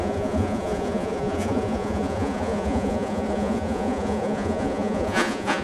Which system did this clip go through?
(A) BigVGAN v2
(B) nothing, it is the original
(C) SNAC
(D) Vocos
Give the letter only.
D